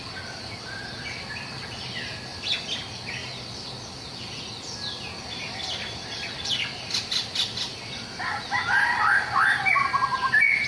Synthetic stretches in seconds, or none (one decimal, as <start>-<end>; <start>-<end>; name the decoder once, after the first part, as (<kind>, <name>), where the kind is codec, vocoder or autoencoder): none